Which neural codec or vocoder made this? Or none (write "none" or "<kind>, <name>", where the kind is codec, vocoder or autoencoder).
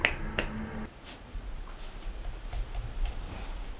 none